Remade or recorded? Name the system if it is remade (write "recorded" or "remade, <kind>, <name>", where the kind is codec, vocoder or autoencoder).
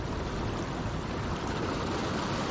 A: recorded